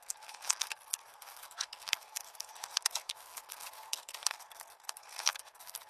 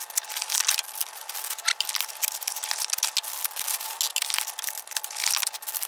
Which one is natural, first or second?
second